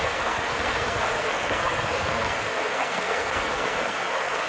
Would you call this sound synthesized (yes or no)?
yes